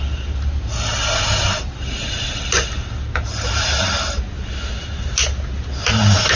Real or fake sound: real